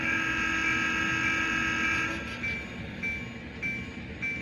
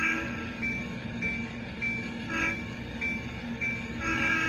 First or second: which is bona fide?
first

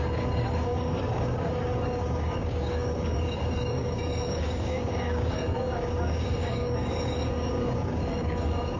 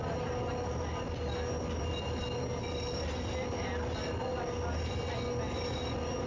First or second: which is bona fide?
second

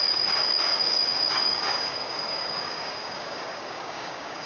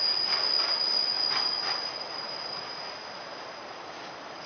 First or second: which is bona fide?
second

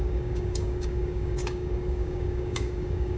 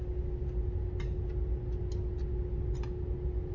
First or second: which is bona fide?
second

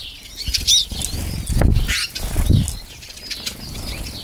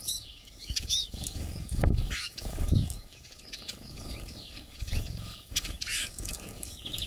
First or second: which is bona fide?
first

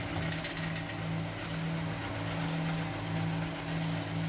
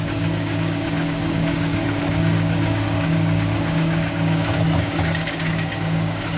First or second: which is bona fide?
first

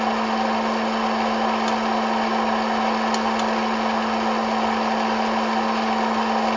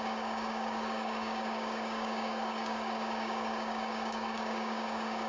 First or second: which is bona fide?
first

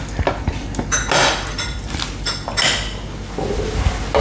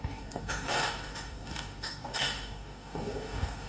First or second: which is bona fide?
first